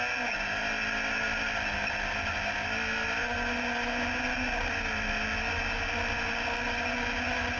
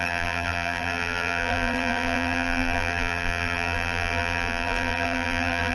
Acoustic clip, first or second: first